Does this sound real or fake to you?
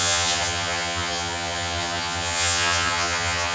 fake